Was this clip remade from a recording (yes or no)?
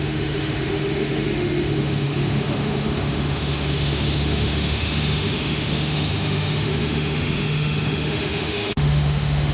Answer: yes